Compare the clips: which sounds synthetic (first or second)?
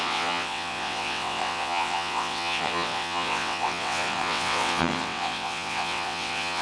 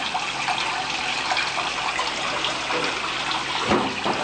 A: first